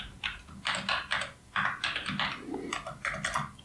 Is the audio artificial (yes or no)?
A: no